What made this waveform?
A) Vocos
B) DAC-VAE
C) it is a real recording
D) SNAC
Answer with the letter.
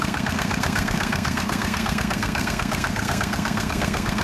D